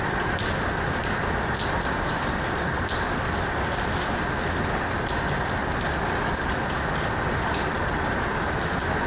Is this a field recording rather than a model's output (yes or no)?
yes